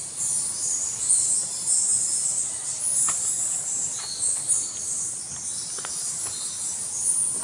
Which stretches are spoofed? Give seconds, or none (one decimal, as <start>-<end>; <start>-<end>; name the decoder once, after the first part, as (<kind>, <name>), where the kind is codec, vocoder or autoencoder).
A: none